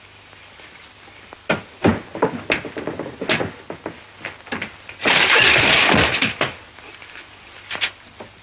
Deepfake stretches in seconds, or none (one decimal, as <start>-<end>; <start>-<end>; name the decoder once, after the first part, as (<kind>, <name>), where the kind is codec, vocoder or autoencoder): 0.0-1.9 (vocoder, BigVGAN v2); 5.0-8.4